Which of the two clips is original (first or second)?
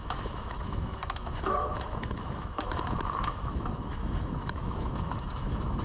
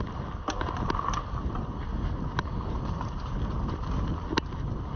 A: second